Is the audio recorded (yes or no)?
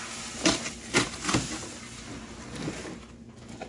yes